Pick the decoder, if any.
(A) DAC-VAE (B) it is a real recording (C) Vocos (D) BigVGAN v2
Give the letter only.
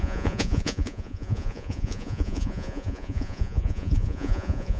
C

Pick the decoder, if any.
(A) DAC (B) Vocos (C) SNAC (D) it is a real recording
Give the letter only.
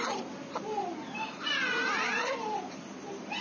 D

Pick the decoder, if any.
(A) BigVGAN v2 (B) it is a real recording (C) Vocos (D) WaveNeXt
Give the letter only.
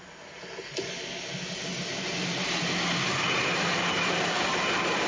B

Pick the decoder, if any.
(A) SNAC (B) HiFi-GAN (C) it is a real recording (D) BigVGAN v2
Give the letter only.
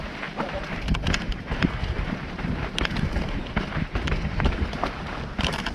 D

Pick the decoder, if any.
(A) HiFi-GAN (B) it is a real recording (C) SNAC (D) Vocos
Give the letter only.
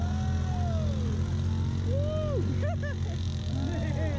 B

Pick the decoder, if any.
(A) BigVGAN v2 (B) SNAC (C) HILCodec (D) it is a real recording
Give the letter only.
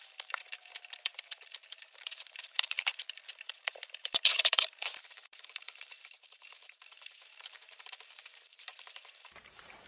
A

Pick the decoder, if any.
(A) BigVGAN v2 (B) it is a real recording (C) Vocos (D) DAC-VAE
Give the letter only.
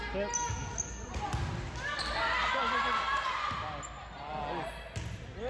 B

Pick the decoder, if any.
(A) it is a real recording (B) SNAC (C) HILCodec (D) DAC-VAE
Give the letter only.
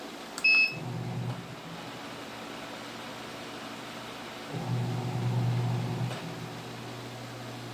A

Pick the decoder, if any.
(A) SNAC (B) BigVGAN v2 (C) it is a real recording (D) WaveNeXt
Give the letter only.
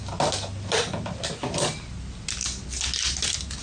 C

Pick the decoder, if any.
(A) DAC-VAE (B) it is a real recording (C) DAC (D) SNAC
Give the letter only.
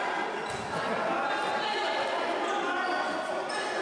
B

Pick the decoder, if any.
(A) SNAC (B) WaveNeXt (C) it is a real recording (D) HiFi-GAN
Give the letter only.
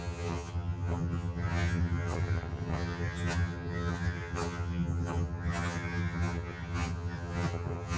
D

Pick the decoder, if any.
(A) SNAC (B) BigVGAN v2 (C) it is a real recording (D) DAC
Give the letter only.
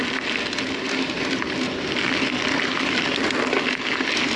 C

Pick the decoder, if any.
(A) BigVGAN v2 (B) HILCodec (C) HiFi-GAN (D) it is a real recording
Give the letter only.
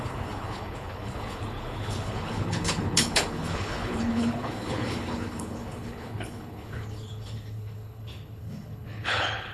B